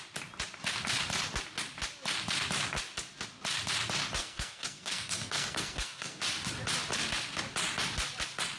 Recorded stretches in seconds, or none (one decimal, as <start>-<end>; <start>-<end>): 0.0-4.2; 6.2-8.6